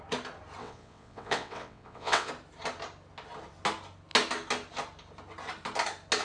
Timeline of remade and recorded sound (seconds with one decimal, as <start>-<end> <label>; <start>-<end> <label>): 0.0-0.6 recorded; 0.6-2.3 remade; 2.3-6.2 recorded